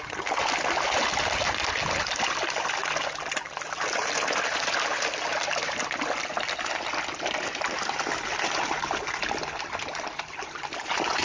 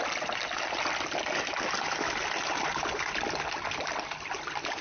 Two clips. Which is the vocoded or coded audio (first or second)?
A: second